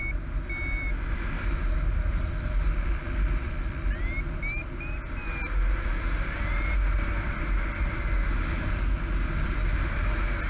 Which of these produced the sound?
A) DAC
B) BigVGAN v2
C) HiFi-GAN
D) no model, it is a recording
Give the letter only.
D